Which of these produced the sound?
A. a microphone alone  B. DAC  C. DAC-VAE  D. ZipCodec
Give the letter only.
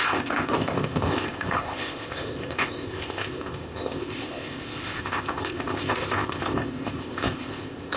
D